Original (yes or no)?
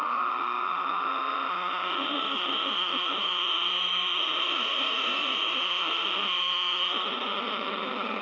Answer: no